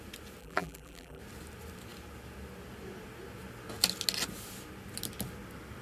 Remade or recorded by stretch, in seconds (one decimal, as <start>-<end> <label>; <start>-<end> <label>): 0.0-0.4 recorded; 0.4-1.2 remade; 1.2-5.8 recorded